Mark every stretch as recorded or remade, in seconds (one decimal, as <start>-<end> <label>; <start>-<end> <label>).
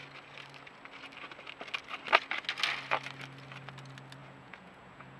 0.0-4.2 recorded; 4.2-5.2 remade